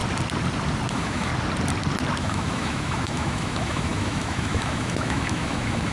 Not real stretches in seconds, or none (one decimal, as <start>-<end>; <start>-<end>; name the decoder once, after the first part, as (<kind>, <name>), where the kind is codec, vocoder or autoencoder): 0.9-1.3 (autoencoder, DAC-VAE); 2.2-5.9